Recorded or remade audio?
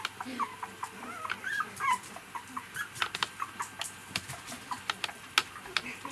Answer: recorded